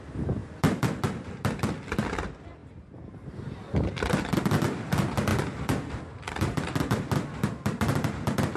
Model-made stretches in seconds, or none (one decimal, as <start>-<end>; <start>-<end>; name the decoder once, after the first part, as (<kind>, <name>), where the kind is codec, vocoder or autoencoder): none